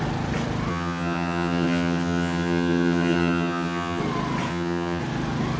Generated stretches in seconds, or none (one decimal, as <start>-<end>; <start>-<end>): 0.7-4.0; 4.5-5.0

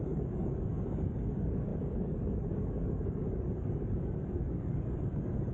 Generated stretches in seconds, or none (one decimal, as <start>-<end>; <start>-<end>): 0.0-5.5

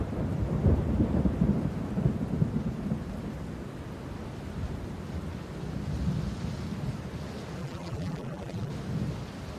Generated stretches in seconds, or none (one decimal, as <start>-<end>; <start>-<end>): 7.6-8.7

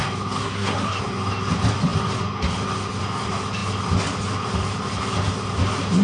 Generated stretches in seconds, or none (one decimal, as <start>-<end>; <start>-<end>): 0.4-1.0

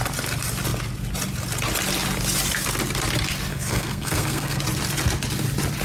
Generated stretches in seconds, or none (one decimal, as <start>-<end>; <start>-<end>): 3.5-4.6

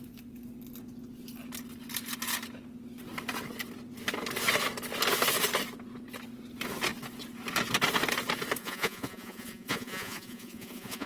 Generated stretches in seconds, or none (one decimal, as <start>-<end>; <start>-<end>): 8.6-11.1

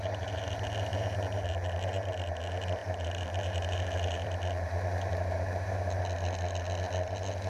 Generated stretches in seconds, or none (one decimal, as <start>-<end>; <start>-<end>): 0.9-2.1; 2.8-6.0

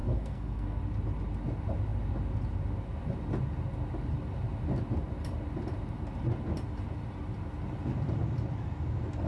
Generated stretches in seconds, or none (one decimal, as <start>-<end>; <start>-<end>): 0.0-0.8